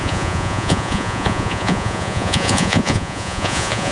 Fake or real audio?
fake